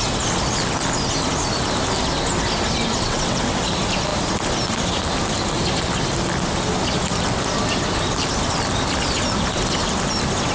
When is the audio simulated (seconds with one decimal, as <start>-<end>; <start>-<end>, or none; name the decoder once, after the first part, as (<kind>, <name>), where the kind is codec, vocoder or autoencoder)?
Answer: 2.9-3.6 (vocoder, WaveNeXt)